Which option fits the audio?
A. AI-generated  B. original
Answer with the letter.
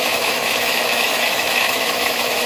A